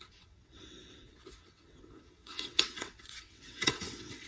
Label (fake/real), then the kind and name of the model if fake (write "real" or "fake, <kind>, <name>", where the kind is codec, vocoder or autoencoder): fake, vocoder, WaveNeXt